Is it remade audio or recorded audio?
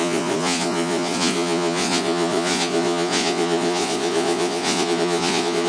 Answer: remade